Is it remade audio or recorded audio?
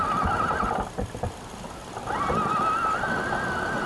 recorded